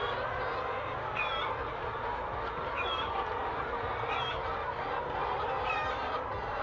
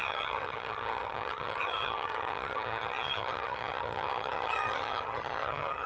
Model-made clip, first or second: second